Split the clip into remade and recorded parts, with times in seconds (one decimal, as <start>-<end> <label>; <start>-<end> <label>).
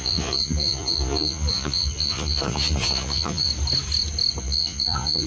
0.0-3.5 remade; 3.5-4.4 recorded; 4.4-5.3 remade